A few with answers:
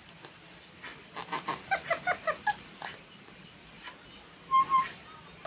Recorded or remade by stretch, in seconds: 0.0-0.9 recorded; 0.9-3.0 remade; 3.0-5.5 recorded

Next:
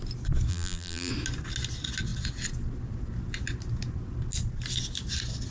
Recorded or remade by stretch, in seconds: 0.0-0.5 recorded; 0.5-1.1 remade; 1.1-5.5 recorded

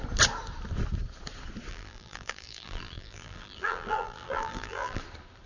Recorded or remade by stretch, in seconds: 0.0-1.7 recorded; 1.7-5.0 remade; 5.0-5.5 recorded

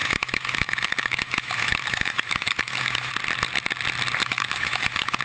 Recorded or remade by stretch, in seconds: 0.0-3.1 remade; 3.1-4.2 recorded; 4.2-5.2 remade

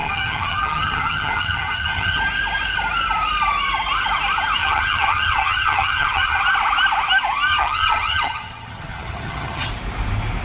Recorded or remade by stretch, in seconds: 0.0-2.2 remade; 2.2-4.6 recorded; 4.6-6.4 remade; 6.4-7.5 recorded; 7.5-9.7 remade; 9.7-10.4 recorded

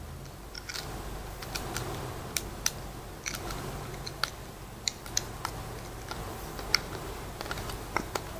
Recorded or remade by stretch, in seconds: 0.0-8.4 recorded